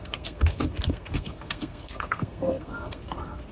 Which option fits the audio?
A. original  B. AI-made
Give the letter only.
B